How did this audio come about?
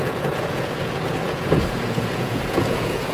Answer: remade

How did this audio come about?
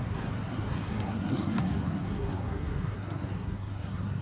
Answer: remade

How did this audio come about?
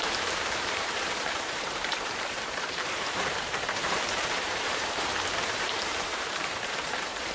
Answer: remade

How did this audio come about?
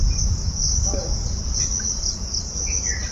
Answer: recorded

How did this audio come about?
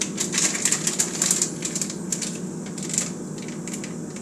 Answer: recorded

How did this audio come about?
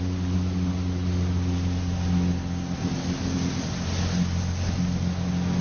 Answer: recorded